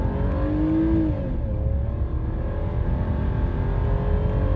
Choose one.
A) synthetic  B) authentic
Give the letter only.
B